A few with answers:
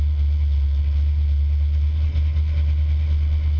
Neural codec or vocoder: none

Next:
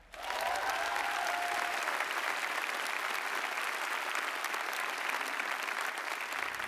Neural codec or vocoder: none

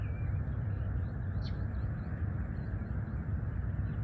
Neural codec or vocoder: none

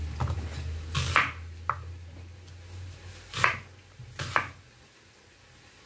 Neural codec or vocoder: none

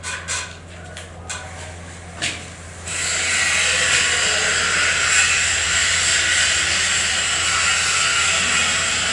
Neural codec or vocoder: none